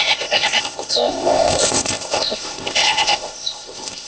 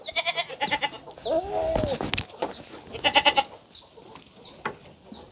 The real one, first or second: second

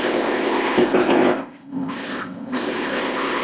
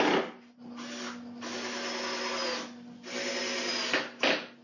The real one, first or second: second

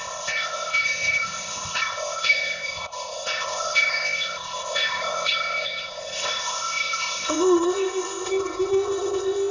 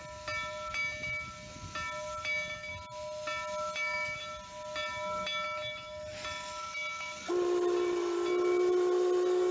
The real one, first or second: second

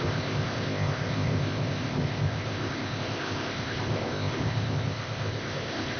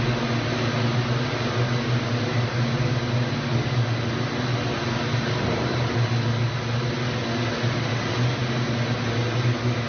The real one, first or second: second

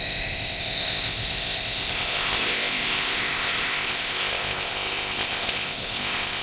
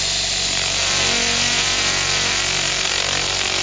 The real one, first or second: second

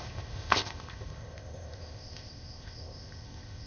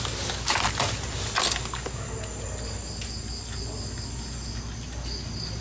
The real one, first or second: second